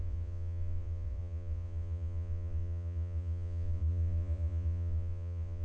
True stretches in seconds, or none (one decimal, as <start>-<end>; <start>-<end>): none